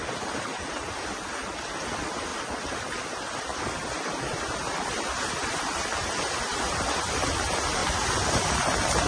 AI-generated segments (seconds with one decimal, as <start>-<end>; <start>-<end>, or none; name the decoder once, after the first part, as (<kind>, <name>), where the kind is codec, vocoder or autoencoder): none